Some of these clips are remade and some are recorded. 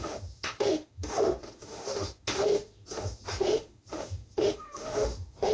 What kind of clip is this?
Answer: remade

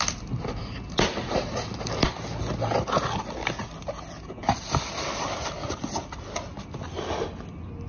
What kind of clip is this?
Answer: recorded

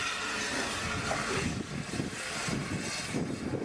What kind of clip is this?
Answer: recorded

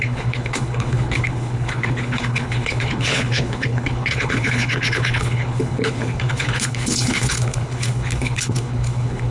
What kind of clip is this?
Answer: remade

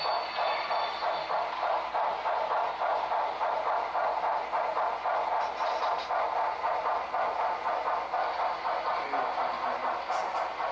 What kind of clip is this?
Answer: recorded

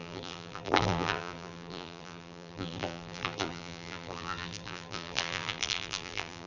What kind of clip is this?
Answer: remade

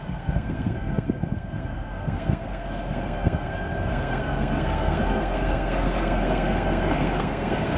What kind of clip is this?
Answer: remade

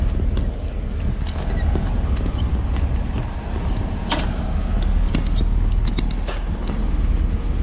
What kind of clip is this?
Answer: recorded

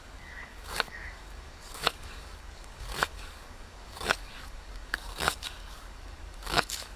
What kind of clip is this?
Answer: remade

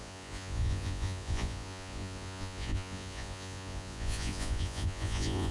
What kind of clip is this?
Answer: remade